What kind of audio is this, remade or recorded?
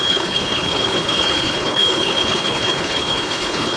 remade